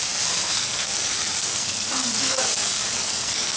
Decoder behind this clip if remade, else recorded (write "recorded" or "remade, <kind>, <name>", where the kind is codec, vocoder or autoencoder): remade, codec, SNAC